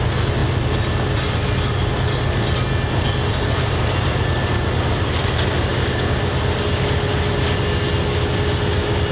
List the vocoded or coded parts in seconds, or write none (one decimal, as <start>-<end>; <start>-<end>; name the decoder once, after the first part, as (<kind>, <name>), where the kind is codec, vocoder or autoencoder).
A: 5.7-6.2 (codec, DAC)